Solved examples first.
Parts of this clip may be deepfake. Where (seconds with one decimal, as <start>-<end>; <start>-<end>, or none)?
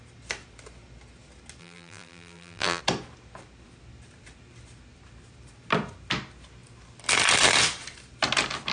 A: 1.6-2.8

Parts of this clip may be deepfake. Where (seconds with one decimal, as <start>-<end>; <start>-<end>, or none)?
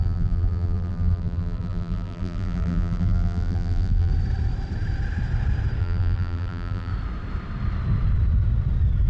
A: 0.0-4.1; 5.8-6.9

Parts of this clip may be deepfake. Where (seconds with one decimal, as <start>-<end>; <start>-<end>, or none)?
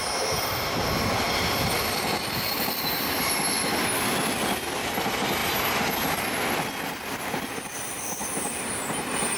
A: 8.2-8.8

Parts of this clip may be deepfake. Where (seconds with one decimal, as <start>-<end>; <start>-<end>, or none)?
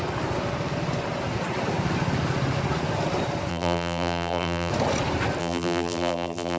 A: 3.5-4.7; 5.4-6.6